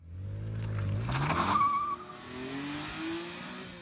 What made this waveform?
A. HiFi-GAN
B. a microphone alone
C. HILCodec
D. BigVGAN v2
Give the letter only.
B